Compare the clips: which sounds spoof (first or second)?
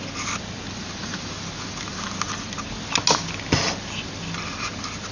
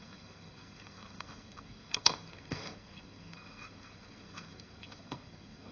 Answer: second